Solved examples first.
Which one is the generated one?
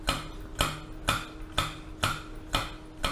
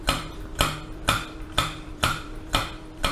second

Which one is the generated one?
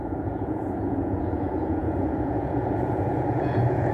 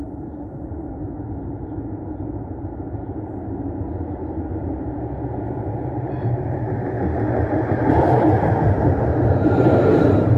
first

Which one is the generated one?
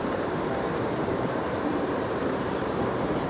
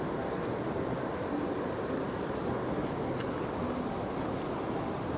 first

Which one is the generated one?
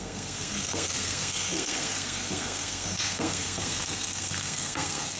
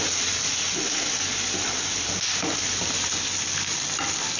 first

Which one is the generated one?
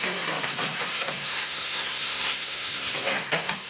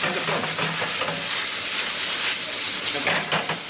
first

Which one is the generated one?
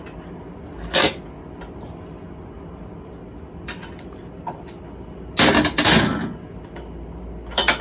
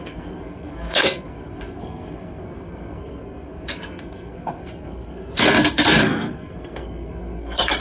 second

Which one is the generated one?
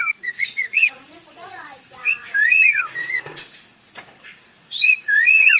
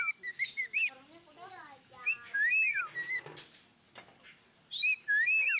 first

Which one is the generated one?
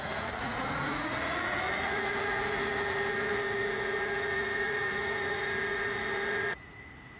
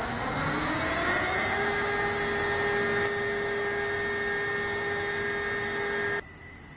first